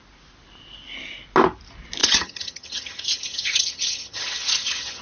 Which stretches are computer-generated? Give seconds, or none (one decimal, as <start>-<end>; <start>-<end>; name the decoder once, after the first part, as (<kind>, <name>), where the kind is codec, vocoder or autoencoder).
2.0-5.0 (vocoder, HiFi-GAN)